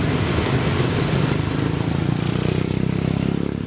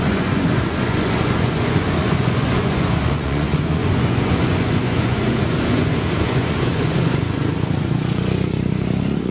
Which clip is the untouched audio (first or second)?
first